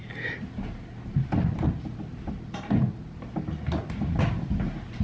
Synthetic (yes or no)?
no